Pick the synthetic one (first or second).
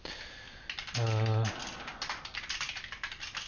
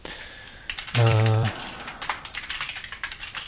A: second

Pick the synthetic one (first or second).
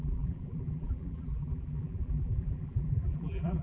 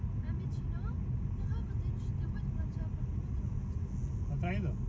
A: first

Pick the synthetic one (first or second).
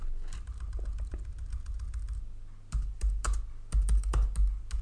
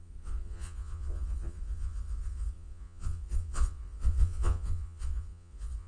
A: second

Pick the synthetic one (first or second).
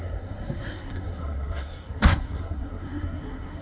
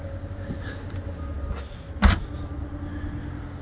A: first